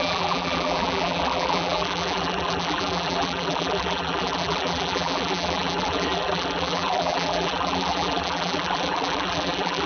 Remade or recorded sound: remade